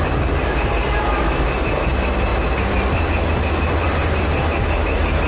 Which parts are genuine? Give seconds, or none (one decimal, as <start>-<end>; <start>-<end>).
0.0-5.3